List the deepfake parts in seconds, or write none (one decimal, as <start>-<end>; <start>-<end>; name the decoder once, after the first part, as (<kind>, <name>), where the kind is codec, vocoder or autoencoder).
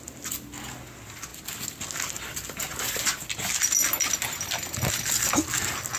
none